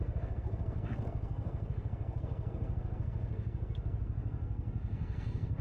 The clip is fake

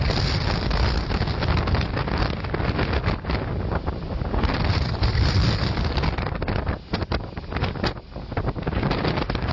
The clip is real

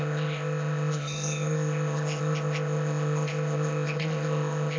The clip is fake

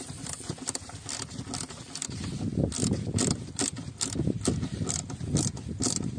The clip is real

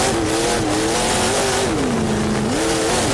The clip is real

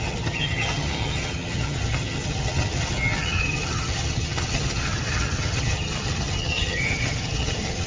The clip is fake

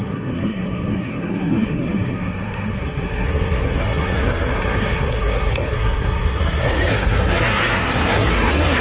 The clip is fake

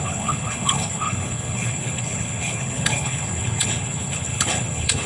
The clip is fake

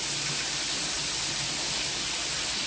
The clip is real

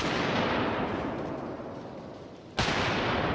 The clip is real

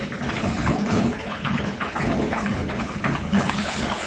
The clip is fake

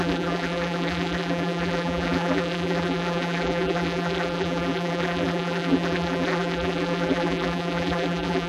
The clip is fake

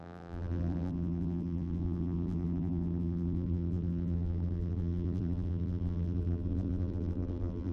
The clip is fake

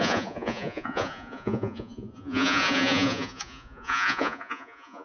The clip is fake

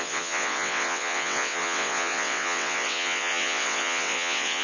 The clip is fake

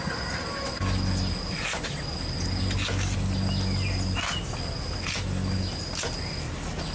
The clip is real